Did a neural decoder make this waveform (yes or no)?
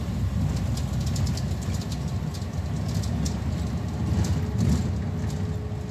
no